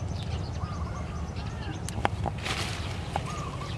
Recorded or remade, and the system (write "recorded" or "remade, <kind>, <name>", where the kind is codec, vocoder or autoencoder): recorded